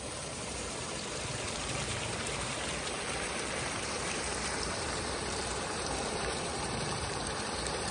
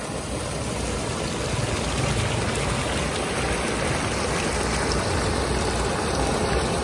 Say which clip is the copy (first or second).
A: first